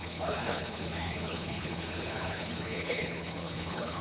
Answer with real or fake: fake